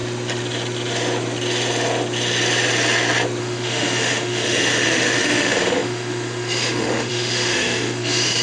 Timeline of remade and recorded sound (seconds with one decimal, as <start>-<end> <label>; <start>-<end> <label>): 0.0-3.4 recorded; 3.4-8.4 remade